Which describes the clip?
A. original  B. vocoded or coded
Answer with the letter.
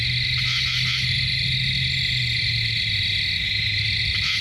A